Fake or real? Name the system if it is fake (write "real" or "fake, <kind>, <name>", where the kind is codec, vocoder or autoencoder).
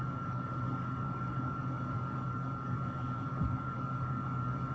fake, codec, DAC